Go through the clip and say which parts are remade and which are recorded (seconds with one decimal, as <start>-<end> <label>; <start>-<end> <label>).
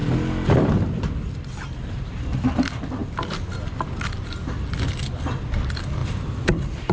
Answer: 0.0-6.0 recorded; 6.0-6.9 remade